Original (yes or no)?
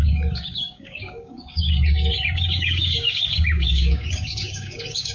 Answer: no